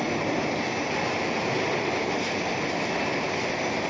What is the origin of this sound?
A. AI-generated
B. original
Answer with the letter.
B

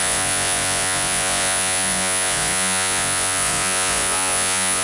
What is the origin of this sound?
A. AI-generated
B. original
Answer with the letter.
A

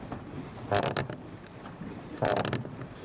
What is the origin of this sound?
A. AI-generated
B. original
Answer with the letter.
B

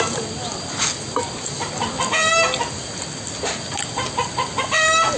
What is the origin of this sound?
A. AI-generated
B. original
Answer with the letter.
B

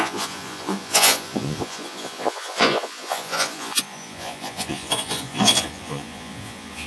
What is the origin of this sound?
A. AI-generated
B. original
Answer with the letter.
A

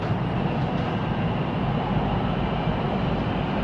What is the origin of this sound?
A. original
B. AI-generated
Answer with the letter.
A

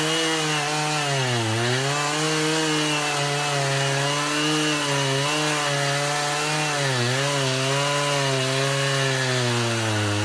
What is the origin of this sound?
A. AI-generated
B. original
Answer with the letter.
B